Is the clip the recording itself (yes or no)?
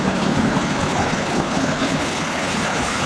no